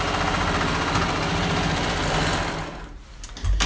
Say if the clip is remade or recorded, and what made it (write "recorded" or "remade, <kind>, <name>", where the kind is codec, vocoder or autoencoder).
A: recorded